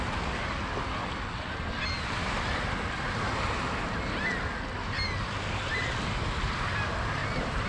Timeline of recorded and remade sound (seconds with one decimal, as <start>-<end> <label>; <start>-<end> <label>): 0.0-7.2 recorded; 7.2-7.7 remade